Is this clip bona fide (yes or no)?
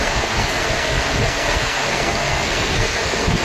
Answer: no